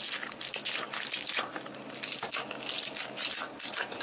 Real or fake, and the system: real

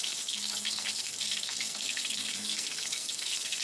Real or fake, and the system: fake, codec, SNAC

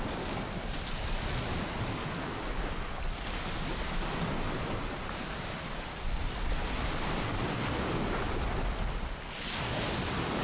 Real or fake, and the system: real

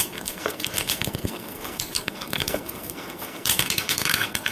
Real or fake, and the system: fake, codec, SNAC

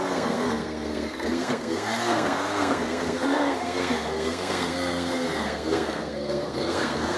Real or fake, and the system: fake, codec, SNAC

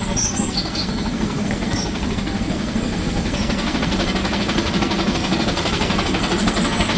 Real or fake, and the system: fake, codec, SNAC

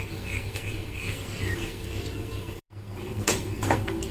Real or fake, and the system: fake, codec, SNAC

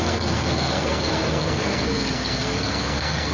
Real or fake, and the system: fake, codec, SNAC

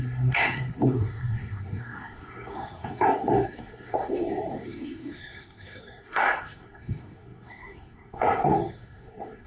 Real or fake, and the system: fake, codec, SNAC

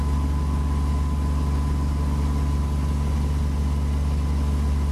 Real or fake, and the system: real